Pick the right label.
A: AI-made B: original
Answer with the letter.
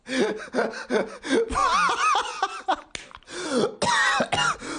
B